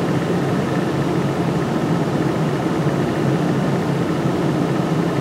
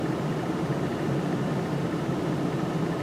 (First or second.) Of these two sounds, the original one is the first